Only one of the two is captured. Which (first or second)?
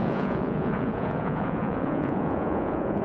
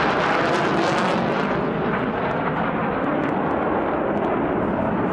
second